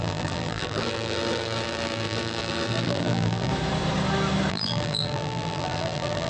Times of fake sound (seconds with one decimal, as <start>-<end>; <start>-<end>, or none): 0.0-3.5; 4.5-6.3